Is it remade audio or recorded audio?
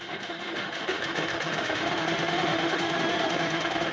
remade